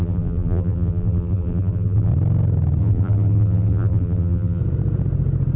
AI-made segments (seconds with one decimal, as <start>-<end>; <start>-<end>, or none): 0.0-2.1; 2.8-4.6